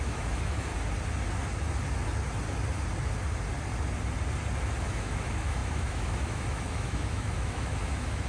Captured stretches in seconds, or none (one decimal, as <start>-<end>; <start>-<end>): 0.7-4.8